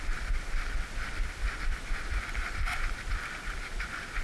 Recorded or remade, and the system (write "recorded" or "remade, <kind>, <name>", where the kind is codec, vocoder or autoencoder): recorded